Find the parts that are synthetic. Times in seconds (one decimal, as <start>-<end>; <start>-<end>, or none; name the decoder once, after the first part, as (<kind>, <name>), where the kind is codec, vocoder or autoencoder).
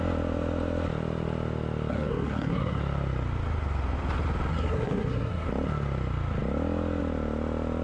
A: 1.9-2.8 (codec, SNAC); 4.5-5.5